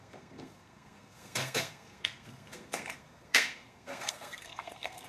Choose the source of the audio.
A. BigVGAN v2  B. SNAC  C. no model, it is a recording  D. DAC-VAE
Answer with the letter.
B